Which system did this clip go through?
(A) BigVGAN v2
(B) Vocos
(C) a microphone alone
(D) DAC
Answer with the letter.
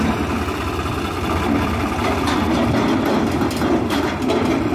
A